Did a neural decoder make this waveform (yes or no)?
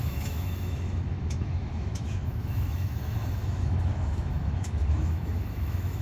yes